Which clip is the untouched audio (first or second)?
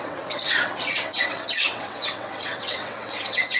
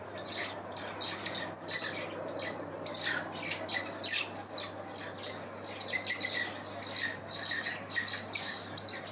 second